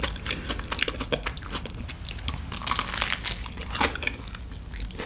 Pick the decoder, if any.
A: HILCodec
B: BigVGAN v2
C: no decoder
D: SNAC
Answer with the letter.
C